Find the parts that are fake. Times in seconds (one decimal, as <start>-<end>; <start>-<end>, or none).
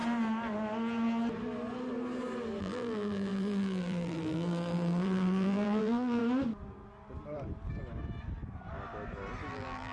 2.6-6.2; 9.5-9.9